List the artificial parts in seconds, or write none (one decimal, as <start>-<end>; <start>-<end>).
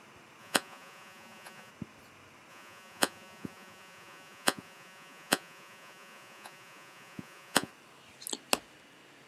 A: 0.4-1.7; 2.5-7.7